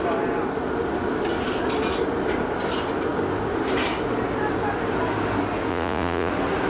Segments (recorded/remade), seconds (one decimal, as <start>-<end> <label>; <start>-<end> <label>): 0.0-5.7 recorded; 5.7-6.3 remade; 6.3-6.7 recorded